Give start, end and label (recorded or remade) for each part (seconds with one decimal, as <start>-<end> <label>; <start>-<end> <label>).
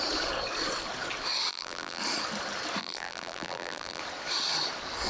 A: 0.0-1.5 recorded; 1.5-2.0 remade; 2.0-2.8 recorded; 2.8-4.0 remade; 4.0-5.1 recorded